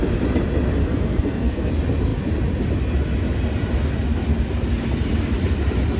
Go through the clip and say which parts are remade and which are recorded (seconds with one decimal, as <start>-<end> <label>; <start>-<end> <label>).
0.0-0.8 recorded; 0.8-1.7 remade; 1.7-6.0 recorded